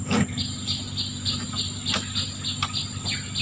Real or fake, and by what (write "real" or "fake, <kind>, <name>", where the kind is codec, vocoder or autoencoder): real